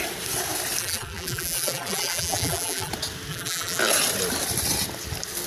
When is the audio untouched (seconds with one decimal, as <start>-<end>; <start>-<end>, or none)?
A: 0.0-0.8; 2.9-3.3; 3.8-5.5